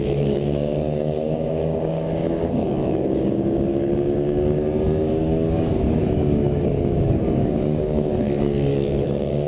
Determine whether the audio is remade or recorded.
remade